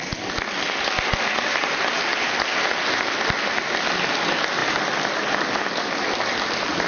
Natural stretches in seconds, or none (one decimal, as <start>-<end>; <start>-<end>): 0.0-6.9